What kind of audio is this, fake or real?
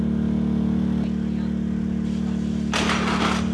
real